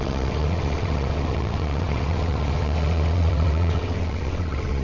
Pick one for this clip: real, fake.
fake